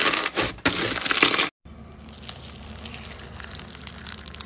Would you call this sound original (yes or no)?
yes